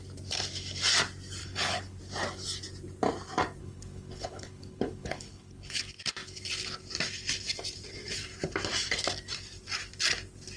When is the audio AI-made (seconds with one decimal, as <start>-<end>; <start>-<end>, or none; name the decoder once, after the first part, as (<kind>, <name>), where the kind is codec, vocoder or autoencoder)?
1.4-2.0 (codec, HILCodec); 3.6-5.8